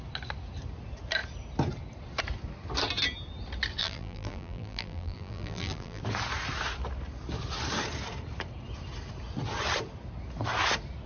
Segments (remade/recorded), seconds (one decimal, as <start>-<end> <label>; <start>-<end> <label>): 0.0-3.8 recorded; 3.8-6.0 remade; 6.0-11.1 recorded